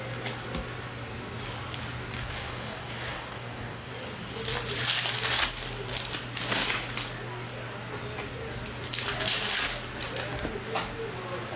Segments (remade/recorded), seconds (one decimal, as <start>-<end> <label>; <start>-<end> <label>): 0.0-2.1 recorded; 2.1-3.9 remade; 3.9-11.6 recorded